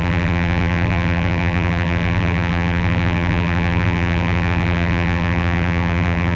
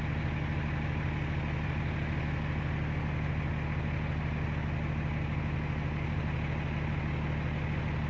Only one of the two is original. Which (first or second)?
second